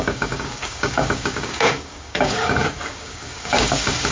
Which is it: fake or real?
fake